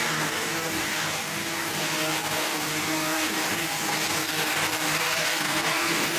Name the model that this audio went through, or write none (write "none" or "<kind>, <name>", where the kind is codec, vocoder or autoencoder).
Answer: codec, DAC